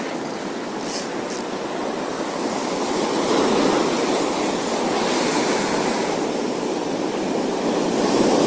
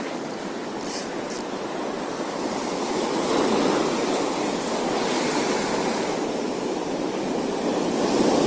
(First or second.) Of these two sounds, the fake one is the second